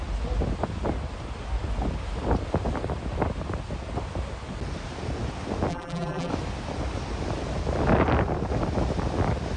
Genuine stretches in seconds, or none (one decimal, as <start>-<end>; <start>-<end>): 0.0-5.7; 6.3-9.6